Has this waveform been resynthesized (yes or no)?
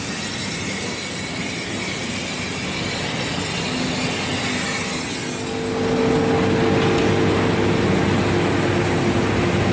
no